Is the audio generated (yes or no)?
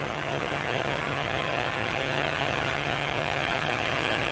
yes